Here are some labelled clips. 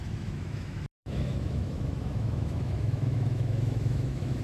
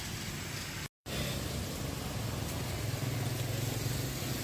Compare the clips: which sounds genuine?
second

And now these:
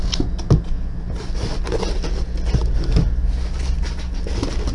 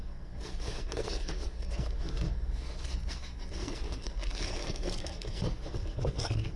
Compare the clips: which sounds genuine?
first